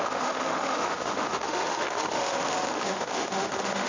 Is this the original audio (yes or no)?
no